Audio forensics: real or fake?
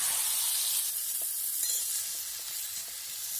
real